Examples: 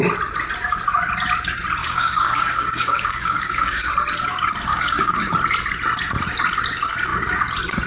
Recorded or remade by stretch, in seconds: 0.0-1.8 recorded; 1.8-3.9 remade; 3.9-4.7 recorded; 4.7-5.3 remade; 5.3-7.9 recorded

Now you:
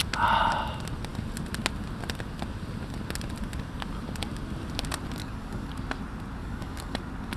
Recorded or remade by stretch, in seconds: 0.0-5.2 recorded; 5.2-5.7 remade; 5.7-6.4 recorded; 6.4-7.0 remade; 7.0-7.4 recorded

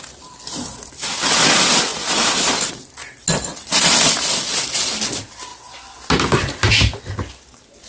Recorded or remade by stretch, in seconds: 0.0-7.9 recorded

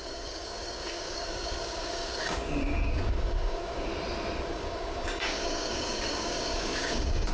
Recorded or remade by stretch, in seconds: 0.0-3.9 remade; 3.9-4.5 recorded; 4.5-7.3 remade

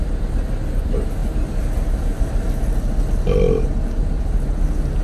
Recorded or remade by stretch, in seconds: 0.0-5.0 recorded

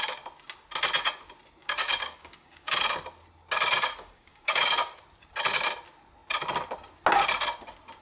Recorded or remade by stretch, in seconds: 0.0-1.6 recorded; 1.6-2.8 remade; 2.8-3.9 recorded; 3.9-5.0 remade; 5.0-8.0 recorded

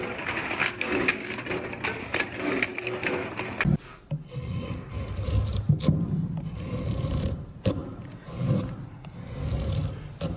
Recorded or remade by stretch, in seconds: 0.0-0.6 recorded; 0.6-1.3 remade; 1.3-10.4 recorded